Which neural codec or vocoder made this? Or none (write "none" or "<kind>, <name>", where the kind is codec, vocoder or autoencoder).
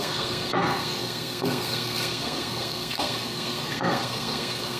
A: codec, SNAC